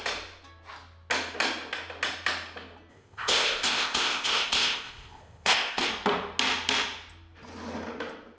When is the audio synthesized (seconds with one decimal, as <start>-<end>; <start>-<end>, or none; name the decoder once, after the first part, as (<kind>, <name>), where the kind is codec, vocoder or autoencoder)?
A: 2.9-5.9 (codec, ZipCodec)